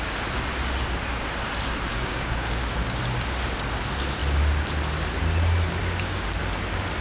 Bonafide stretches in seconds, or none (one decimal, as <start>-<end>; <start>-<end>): 0.0-1.9; 3.0-5.8; 6.4-7.0

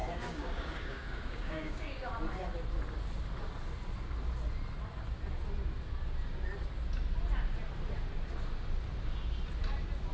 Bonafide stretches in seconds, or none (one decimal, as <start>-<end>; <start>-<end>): 2.1-10.1

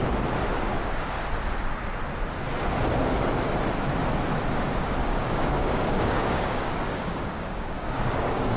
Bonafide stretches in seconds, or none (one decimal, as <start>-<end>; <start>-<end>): 0.0-5.0

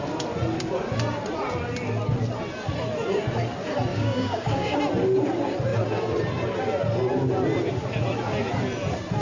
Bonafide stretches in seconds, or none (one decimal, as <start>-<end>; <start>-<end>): 0.0-3.9; 4.8-9.2